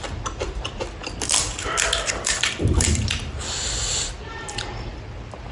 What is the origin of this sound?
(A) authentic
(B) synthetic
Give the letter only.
B